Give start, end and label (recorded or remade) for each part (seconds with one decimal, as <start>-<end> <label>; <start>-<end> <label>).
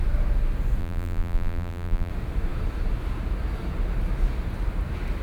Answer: 0.0-0.8 recorded; 0.8-2.1 remade; 2.1-5.2 recorded